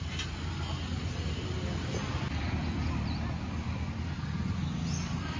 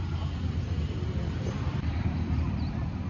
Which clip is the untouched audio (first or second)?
first